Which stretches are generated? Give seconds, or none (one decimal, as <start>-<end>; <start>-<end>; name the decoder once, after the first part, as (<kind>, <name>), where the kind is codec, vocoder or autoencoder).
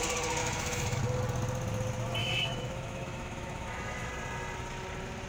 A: 0.4-1.0 (autoencoder, DAC-VAE); 2.2-4.1